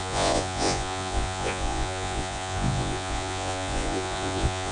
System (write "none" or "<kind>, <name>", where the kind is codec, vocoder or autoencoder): vocoder, Vocos